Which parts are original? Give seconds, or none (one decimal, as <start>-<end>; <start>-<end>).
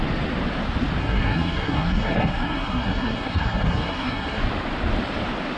0.0-1.0; 4.4-5.6